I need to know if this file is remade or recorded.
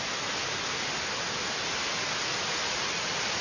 recorded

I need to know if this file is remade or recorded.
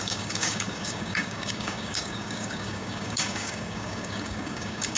remade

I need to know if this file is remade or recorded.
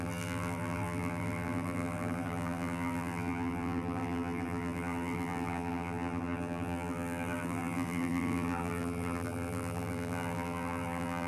remade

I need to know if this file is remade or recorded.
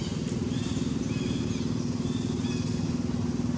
recorded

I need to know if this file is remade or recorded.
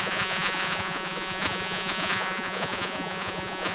remade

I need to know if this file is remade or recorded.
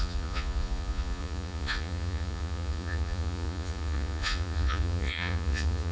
remade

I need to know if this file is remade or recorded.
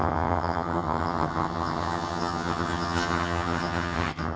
remade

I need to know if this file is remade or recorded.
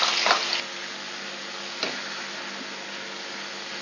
recorded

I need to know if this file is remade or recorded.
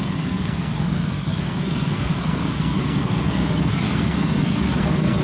remade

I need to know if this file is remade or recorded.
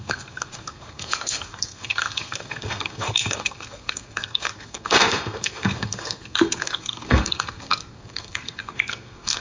remade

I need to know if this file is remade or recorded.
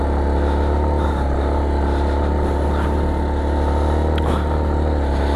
recorded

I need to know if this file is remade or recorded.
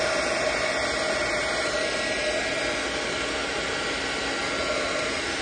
recorded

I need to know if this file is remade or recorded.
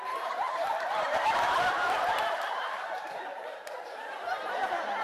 remade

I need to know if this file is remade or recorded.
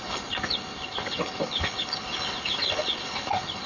remade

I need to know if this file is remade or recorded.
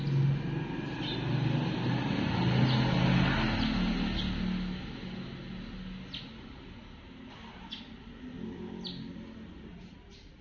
recorded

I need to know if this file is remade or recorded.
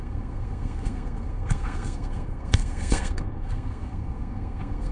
remade